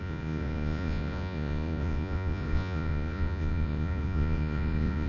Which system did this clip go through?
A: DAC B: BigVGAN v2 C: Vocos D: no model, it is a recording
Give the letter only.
C